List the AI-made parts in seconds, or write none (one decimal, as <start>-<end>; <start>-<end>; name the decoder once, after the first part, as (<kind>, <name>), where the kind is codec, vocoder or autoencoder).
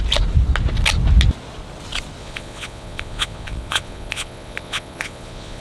2.2-5.6 (vocoder, Vocos)